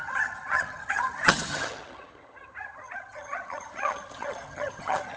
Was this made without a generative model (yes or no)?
no